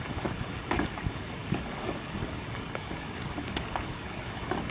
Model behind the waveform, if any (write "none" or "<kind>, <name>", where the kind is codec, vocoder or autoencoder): codec, DAC